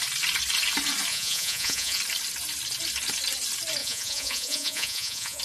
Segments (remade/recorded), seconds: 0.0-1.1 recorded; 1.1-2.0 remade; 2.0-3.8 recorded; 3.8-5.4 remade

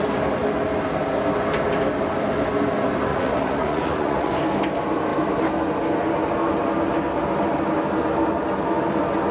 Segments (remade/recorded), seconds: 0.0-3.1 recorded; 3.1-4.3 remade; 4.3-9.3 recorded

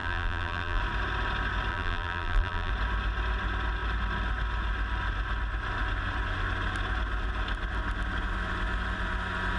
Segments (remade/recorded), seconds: 0.0-0.8 remade; 0.8-1.7 recorded; 1.7-2.7 remade; 2.7-9.6 recorded

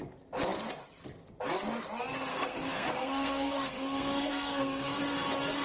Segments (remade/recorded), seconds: 0.0-2.3 recorded; 2.3-5.0 remade; 5.0-5.6 recorded

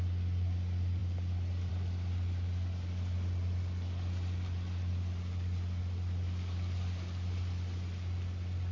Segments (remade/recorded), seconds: 0.0-8.7 recorded

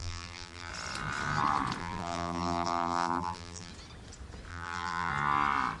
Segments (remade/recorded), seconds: 0.0-0.7 remade; 0.7-1.8 recorded; 1.8-3.7 remade; 3.7-4.5 recorded; 4.5-5.1 remade; 5.1-5.8 recorded